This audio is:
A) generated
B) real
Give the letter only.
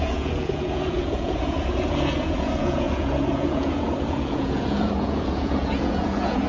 A